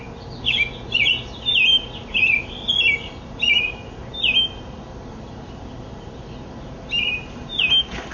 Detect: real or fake real